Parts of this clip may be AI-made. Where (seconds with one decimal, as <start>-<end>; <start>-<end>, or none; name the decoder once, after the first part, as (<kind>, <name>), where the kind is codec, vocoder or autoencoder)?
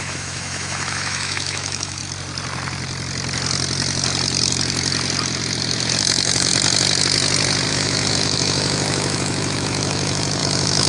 0.0-2.0 (autoencoder, DAC-VAE); 6.0-6.5; 7.7-10.9